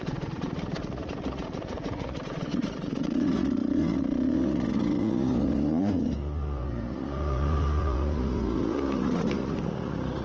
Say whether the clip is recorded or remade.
remade